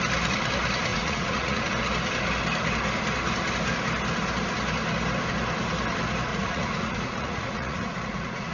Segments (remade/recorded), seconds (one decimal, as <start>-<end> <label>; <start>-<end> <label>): 0.0-0.9 recorded; 0.9-1.6 remade; 1.6-6.3 recorded; 6.3-8.5 remade